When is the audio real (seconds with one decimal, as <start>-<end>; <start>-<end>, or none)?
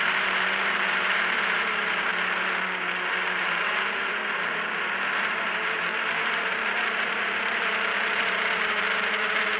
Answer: 2.1-3.1; 4.2-5.2